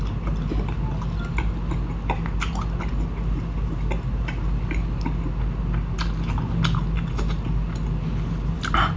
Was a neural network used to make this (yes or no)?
no